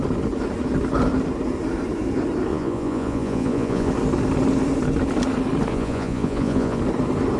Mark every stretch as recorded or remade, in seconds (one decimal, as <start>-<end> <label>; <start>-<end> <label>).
0.0-2.5 recorded; 2.5-3.9 remade; 3.9-5.7 recorded; 5.7-6.8 remade; 6.8-7.4 recorded